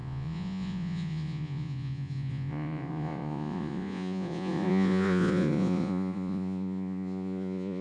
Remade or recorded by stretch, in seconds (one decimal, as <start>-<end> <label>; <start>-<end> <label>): 0.0-7.8 remade